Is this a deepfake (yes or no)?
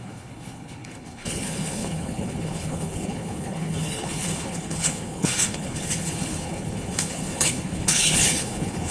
yes